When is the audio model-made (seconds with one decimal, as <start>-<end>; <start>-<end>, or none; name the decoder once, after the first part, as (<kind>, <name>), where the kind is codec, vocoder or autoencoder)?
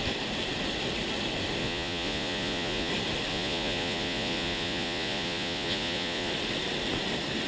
1.6-2.9 (vocoder, Vocos); 3.3-6.3